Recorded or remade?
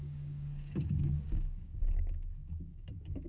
remade